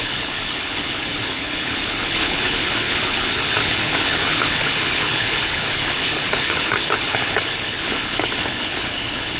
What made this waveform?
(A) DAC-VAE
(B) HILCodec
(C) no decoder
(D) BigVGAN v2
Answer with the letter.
B